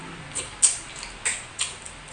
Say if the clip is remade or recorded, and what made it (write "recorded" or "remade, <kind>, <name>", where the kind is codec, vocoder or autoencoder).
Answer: recorded